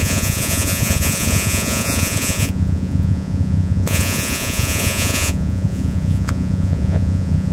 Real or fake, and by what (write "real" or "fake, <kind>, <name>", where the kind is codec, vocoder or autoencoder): fake, vocoder, Vocos